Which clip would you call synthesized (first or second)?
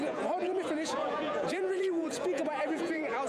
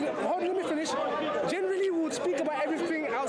first